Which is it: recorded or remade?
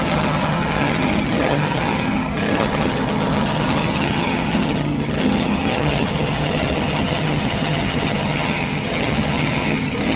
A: remade